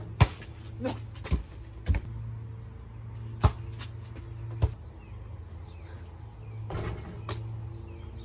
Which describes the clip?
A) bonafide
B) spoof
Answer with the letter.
A